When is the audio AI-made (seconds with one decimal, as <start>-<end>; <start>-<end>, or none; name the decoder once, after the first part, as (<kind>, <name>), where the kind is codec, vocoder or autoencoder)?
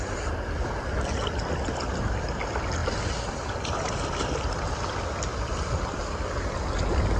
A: none